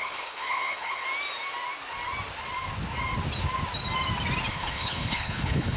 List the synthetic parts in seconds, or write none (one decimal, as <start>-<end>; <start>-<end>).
0.0-1.0; 4.5-5.8